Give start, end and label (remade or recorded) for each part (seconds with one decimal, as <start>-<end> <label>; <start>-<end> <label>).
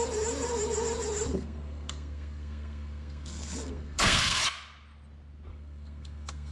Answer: 0.0-1.3 recorded; 1.3-4.4 remade; 4.4-5.5 recorded; 5.5-6.5 remade